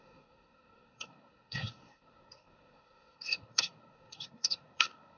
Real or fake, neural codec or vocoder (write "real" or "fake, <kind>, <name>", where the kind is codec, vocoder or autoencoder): fake, codec, SNAC